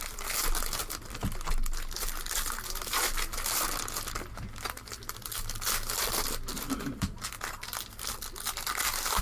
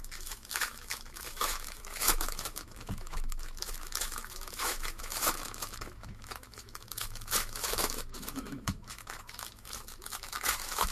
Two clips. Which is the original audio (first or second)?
first